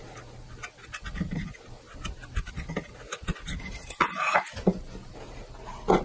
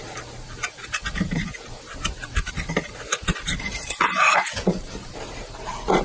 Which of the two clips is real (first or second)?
first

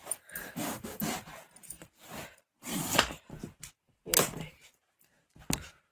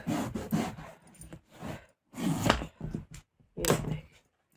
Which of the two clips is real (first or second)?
second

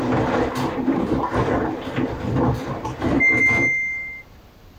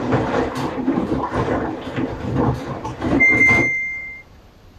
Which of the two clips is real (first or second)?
first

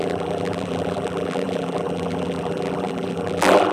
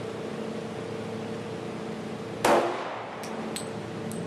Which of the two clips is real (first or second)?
second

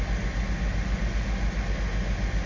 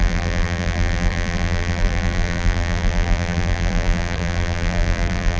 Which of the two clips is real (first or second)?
first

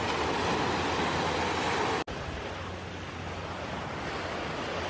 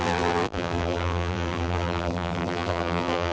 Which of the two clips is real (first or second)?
first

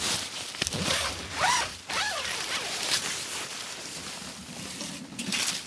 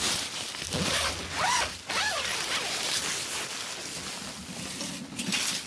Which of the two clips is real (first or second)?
second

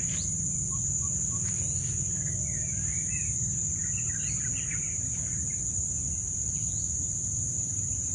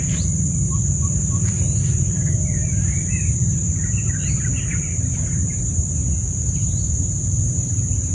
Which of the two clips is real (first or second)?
first